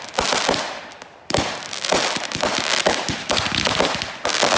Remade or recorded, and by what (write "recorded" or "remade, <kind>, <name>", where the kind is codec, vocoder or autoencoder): recorded